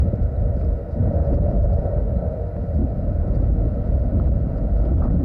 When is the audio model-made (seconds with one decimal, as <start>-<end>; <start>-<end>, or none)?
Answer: 1.0-2.0; 2.8-5.2